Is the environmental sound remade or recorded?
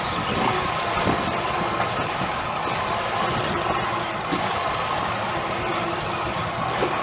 recorded